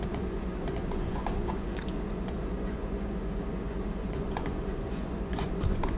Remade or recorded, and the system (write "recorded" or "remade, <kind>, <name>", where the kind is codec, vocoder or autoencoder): remade, vocoder, Vocos